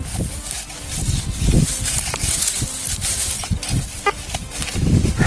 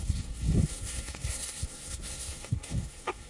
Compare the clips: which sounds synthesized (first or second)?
second